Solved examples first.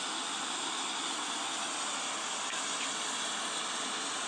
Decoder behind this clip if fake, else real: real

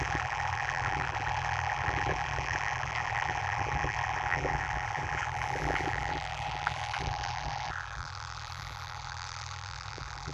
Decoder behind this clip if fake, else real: fake, vocoder, BigVGAN v2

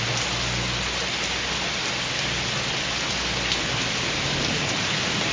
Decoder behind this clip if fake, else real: real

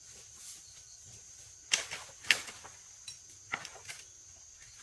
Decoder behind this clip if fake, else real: real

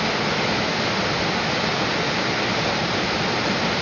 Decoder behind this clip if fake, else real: real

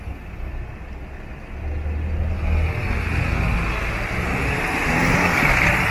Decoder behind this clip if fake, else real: real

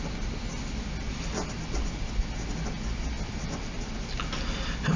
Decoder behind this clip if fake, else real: real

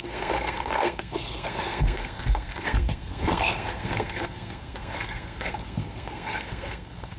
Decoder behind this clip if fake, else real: fake, codec, SNAC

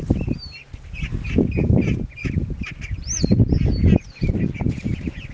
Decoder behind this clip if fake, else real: real